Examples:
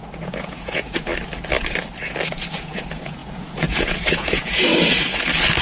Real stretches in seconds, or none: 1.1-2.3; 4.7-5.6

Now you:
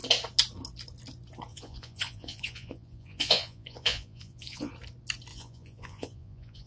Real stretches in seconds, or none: 0.0-1.5; 4.7-5.3